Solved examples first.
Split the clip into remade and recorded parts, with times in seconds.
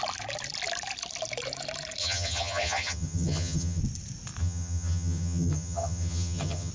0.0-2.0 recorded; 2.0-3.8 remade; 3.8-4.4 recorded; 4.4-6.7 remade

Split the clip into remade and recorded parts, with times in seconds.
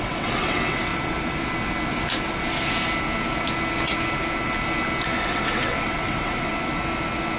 0.0-0.9 remade; 0.9-5.3 recorded; 5.3-6.5 remade; 6.5-7.4 recorded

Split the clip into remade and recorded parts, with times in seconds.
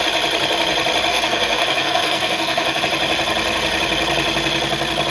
0.0-1.1 recorded; 1.1-2.8 remade; 2.8-5.1 recorded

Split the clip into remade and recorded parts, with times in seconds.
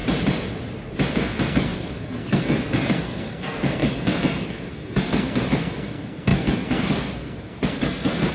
0.0-1.1 recorded; 1.1-8.3 remade